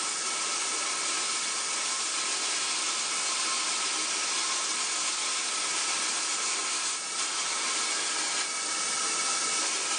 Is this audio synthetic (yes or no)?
no